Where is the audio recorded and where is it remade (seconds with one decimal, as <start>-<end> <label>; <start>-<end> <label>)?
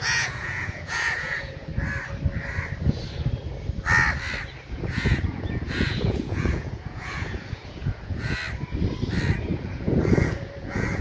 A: 0.0-1.7 remade; 1.7-4.7 recorded; 4.7-8.4 remade; 8.4-9.4 recorded; 9.4-11.0 remade